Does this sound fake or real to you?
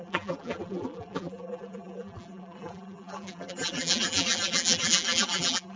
fake